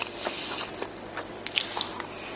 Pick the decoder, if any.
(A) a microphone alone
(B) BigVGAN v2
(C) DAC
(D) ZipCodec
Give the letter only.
A